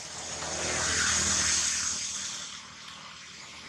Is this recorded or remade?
recorded